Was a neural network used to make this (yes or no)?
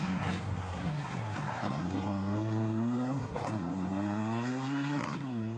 yes